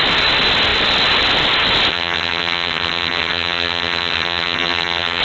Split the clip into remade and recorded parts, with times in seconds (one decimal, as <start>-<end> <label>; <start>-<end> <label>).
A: 0.0-1.9 recorded; 1.9-5.2 remade